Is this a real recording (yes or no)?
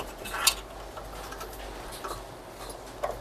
yes